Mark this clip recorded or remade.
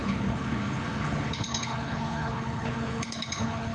remade